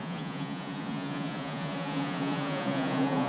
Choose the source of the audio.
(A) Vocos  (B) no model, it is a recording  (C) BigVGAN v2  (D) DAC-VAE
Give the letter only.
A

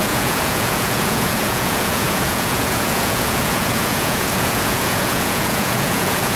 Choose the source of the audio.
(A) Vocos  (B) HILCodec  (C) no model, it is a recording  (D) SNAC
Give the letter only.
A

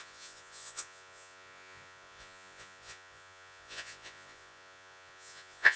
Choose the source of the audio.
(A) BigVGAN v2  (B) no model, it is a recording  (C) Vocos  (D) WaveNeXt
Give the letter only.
C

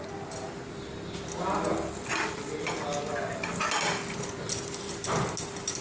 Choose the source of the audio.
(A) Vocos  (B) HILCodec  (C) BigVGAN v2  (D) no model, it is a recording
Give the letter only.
D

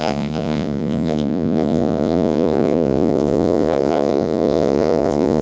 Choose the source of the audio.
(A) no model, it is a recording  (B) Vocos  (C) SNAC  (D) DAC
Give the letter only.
B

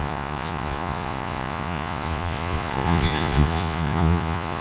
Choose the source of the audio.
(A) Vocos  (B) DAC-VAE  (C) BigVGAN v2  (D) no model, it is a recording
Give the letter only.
A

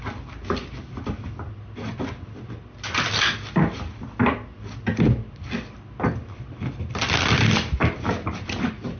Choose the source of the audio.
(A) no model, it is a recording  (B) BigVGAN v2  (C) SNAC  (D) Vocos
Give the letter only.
A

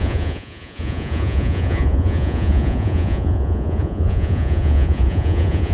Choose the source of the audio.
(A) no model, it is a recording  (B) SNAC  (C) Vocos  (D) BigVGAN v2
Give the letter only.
C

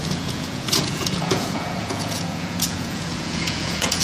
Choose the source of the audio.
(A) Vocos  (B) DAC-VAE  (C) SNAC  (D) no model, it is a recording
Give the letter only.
A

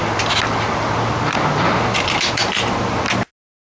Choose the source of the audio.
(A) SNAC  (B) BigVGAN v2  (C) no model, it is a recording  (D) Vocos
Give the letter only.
C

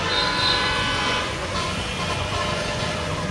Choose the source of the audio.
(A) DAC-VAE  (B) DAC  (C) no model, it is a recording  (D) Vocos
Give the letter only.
D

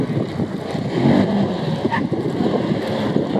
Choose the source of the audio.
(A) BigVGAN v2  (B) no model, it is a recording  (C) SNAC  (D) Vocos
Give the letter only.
B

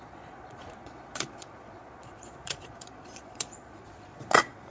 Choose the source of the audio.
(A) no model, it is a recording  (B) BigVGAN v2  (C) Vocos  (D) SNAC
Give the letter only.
C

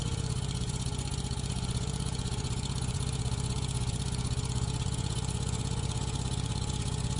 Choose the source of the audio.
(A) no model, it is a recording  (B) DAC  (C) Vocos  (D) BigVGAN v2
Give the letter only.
C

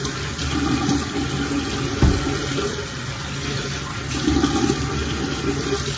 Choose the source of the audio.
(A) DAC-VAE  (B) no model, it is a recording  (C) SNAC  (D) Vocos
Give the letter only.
B